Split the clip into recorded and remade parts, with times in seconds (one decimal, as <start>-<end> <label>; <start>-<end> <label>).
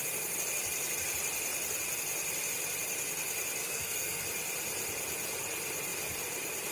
0.0-3.6 recorded; 3.6-4.2 remade; 4.2-6.7 recorded